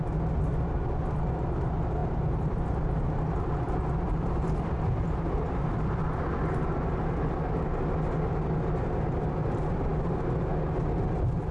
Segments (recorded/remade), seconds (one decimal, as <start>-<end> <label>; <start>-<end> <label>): 0.0-2.0 recorded; 2.0-6.6 remade; 6.6-11.5 recorded